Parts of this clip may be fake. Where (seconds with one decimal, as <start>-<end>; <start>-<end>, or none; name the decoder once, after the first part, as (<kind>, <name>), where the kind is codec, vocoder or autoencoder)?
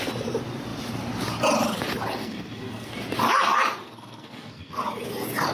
2.2-2.9 (codec, SNAC); 3.8-4.8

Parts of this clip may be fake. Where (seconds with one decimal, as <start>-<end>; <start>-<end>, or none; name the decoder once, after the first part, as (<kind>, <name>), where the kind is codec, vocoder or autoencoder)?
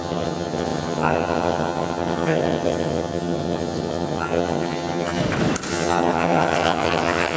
0.0-5.2 (vocoder, HiFi-GAN); 5.7-7.4